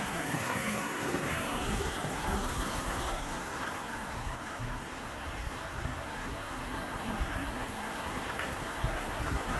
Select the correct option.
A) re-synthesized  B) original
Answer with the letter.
A